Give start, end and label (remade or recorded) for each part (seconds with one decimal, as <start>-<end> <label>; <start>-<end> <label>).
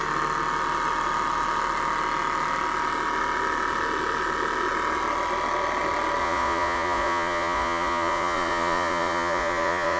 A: 0.0-6.2 recorded; 6.2-10.0 remade